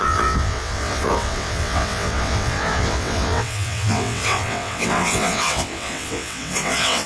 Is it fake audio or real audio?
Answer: fake